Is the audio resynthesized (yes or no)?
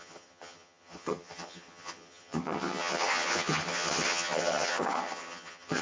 yes